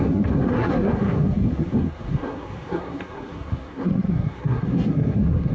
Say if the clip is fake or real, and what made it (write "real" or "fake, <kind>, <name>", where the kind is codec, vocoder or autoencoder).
fake, codec, SNAC